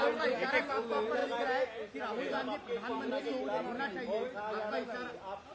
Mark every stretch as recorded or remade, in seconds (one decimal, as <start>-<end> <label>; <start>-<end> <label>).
0.0-5.5 recorded